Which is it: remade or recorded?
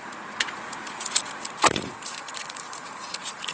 remade